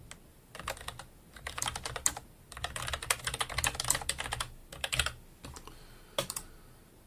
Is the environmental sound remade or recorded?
recorded